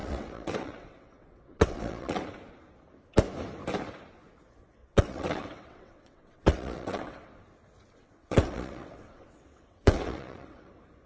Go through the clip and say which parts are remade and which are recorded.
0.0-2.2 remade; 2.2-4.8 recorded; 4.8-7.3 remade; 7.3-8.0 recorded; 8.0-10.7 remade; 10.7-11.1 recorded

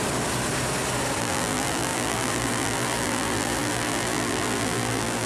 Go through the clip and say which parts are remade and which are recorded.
0.0-1.2 recorded; 1.2-5.3 remade

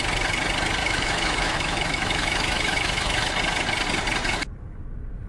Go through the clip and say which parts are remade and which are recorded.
0.0-0.8 recorded; 0.8-3.3 remade; 3.3-5.3 recorded

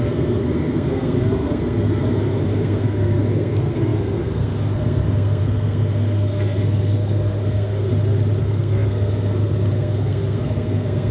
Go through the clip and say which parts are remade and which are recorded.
0.0-7.9 remade; 7.9-8.4 recorded; 8.4-11.1 remade